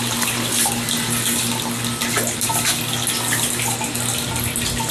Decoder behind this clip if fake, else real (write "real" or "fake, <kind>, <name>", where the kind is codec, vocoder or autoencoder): real